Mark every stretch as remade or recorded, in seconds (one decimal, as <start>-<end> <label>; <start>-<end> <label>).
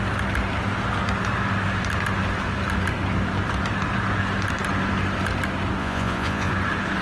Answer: 0.0-5.8 recorded; 5.8-6.5 remade; 6.5-7.0 recorded